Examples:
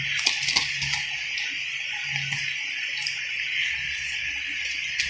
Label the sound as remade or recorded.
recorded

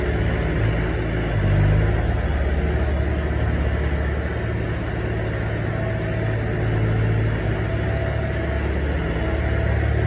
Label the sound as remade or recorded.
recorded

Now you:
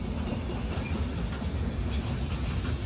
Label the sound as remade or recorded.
recorded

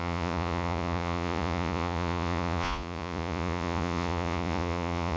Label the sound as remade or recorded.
remade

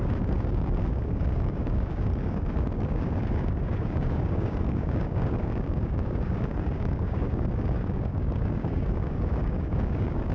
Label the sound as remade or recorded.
remade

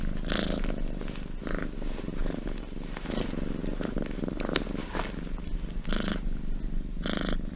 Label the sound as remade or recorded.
recorded